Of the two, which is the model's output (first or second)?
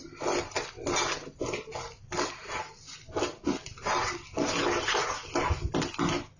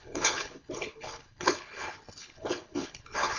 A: second